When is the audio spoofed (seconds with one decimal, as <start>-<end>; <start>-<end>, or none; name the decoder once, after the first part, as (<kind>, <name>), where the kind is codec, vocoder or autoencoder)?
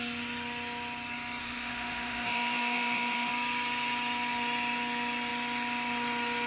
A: 1.4-3.3 (autoencoder, DAC-VAE)